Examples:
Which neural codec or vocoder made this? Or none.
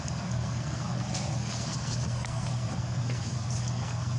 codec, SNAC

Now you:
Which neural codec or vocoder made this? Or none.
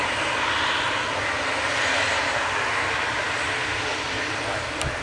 none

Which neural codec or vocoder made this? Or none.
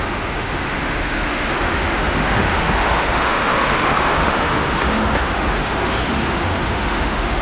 autoencoder, DAC-VAE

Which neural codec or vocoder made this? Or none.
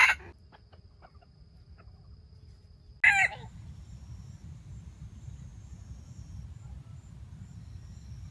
none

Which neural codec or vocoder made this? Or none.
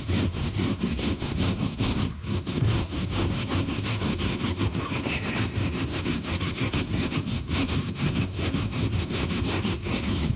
codec, SNAC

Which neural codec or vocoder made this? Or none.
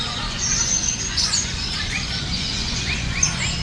vocoder, Vocos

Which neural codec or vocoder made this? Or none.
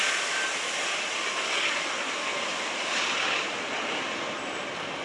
none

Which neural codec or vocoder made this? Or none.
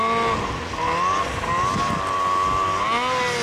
none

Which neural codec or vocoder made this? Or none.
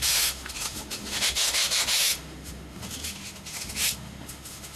autoencoder, DAC-VAE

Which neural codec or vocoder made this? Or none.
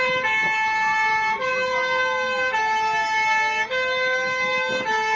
none